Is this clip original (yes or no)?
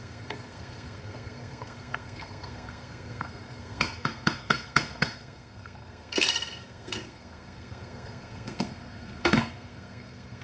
no